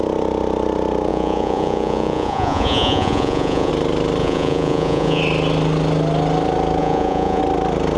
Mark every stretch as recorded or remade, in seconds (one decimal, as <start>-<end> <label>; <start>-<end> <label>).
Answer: 0.0-1.1 recorded; 1.1-3.7 remade; 3.7-4.2 recorded; 4.2-5.2 remade; 5.2-6.8 recorded; 6.8-7.4 remade; 7.4-8.0 recorded